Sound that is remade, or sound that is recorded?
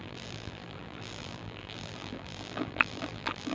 remade